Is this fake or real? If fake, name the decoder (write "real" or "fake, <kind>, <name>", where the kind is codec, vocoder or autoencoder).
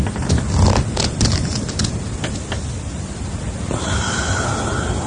real